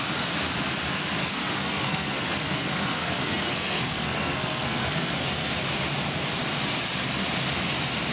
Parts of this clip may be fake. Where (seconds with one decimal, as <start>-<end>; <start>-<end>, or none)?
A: 1.2-5.1